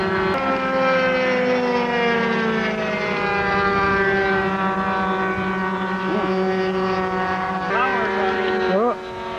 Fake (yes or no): no